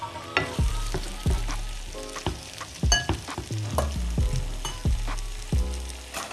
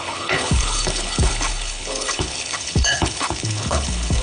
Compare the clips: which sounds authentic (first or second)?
first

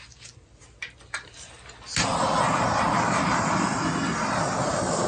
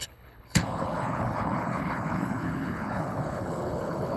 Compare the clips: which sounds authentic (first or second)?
first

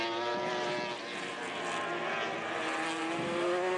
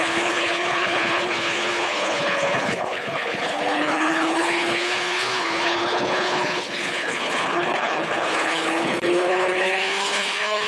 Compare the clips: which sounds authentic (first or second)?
first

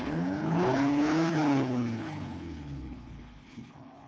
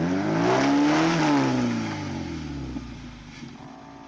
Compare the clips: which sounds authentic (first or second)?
second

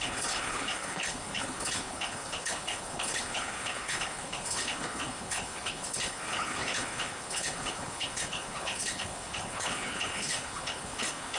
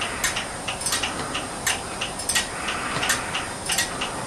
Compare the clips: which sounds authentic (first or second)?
second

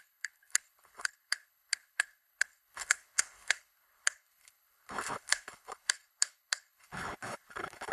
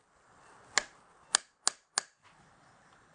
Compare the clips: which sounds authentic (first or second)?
second